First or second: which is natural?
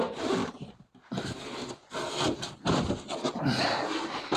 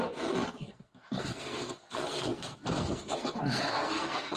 first